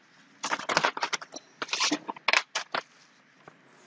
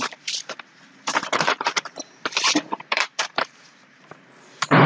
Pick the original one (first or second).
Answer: first